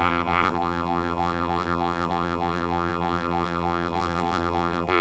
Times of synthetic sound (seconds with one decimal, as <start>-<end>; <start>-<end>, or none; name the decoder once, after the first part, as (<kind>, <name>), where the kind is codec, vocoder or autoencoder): 0.0-5.0 (vocoder, BigVGAN v2)